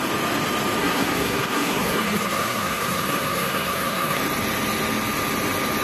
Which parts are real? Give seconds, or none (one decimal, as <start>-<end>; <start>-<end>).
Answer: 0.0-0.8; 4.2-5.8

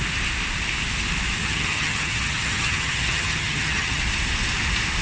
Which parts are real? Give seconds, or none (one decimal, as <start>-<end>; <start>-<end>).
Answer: 0.0-1.4; 4.0-5.0

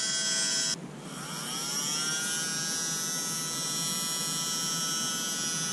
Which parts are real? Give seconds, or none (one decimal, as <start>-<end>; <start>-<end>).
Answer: 0.0-5.7

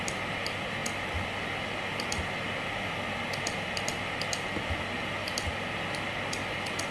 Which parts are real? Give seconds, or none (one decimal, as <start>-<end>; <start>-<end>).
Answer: 0.0-6.9